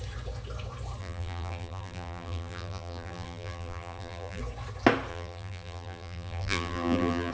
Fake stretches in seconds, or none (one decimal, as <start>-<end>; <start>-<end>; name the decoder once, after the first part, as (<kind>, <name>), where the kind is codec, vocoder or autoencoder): 1.0-4.4 (vocoder, BigVGAN v2); 5.1-7.3